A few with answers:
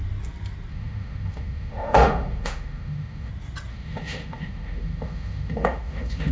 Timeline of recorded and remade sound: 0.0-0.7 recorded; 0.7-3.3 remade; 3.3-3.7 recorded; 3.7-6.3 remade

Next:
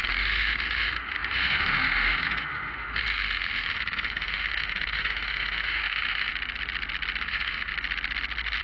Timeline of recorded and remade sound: 0.0-6.3 remade; 6.3-7.2 recorded; 7.2-7.7 remade; 7.7-8.6 recorded

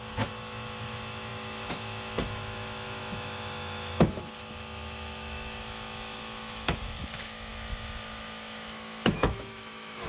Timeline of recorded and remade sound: 0.0-10.1 remade

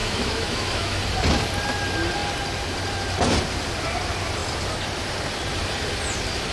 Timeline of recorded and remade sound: 0.0-1.0 remade; 1.0-6.5 recorded

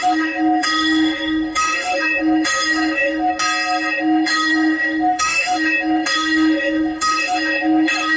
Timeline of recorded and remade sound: 0.0-3.3 remade; 3.3-3.9 recorded; 3.9-8.2 remade

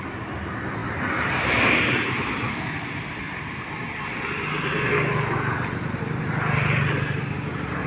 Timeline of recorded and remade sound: 0.0-7.9 recorded